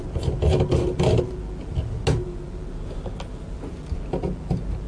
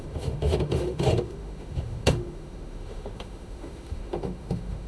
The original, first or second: first